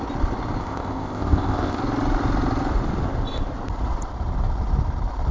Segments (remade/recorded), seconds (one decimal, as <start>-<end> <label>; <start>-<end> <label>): 0.0-0.6 recorded; 0.6-1.8 remade; 1.8-5.3 recorded